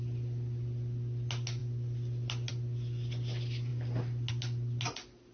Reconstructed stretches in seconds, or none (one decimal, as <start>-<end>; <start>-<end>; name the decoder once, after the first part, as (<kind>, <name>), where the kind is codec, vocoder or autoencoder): none